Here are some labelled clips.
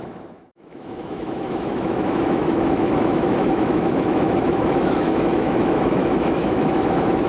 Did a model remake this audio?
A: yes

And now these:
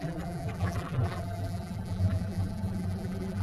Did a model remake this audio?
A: yes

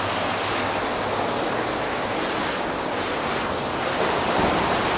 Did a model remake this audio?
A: no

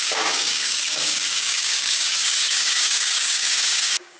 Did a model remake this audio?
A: yes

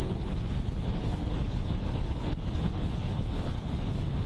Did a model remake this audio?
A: yes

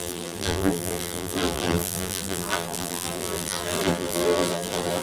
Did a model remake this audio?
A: yes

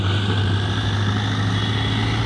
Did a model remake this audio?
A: no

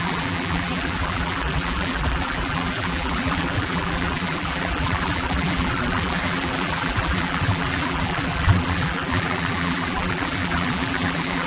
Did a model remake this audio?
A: yes